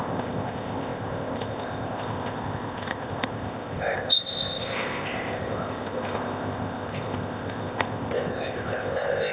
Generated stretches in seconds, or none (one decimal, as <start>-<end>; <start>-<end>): 0.0-9.3